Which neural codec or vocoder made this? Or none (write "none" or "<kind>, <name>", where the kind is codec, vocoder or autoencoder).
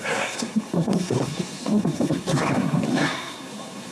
codec, SNAC